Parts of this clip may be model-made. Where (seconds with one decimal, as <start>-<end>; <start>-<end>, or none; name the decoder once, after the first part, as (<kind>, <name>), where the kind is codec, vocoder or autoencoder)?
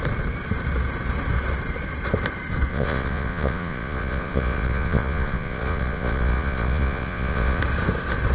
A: 2.7-7.6 (vocoder, Vocos)